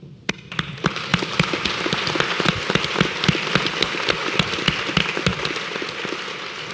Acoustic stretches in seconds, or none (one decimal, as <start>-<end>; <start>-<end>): 0.0-6.7